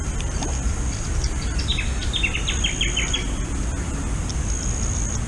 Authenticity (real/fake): real